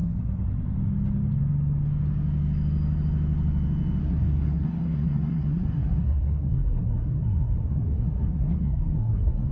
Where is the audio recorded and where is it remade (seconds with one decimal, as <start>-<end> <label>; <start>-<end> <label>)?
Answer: 0.0-4.0 recorded; 4.0-9.5 remade